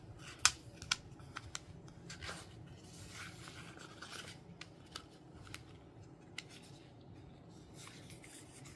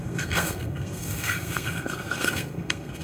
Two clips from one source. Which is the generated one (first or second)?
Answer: second